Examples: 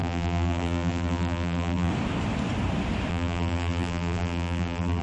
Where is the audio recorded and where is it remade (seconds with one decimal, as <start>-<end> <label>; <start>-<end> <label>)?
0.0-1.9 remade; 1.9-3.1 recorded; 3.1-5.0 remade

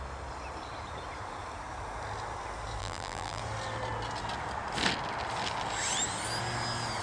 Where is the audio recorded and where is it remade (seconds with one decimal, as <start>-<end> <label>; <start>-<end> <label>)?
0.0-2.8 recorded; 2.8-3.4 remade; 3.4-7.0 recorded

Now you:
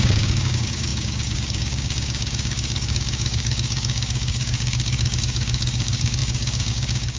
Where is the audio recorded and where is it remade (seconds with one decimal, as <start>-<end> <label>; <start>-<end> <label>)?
0.0-7.2 remade

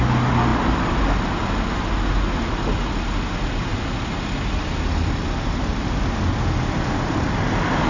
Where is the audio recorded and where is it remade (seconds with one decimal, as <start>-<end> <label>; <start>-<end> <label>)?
0.0-7.9 recorded

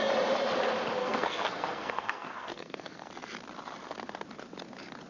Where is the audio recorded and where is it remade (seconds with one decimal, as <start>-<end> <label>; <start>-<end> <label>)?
0.0-1.0 recorded; 1.0-3.1 remade; 3.1-5.1 recorded

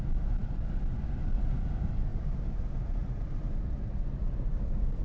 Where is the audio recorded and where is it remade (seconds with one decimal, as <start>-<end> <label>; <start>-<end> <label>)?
0.0-5.0 recorded

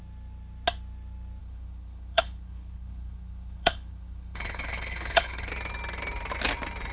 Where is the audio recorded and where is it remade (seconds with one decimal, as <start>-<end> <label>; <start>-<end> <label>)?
0.0-1.4 recorded; 1.4-5.5 remade; 5.5-6.9 recorded

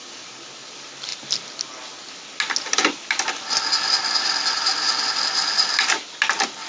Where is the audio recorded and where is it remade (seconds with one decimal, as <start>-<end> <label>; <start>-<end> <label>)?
0.0-6.7 recorded